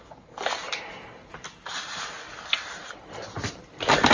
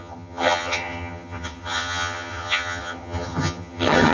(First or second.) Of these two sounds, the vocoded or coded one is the second